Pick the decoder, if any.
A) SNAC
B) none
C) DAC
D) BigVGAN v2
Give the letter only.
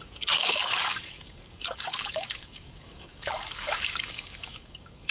C